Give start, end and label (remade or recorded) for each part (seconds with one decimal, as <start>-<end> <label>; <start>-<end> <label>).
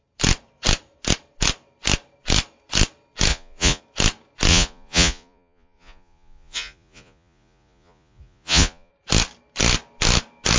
0.0-3.3 recorded; 3.3-3.8 remade; 3.8-4.5 recorded; 4.5-8.9 remade; 8.9-10.6 recorded